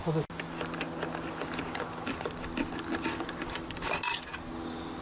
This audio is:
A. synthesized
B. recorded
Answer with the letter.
B